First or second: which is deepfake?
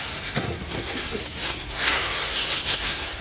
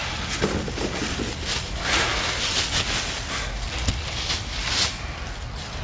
first